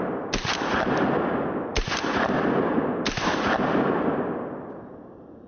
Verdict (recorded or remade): recorded